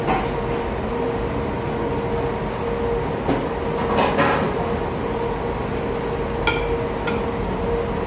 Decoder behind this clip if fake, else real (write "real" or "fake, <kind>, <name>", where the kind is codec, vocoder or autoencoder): real